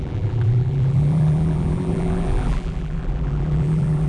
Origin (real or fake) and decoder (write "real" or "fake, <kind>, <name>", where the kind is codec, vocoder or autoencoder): fake, vocoder, BigVGAN v2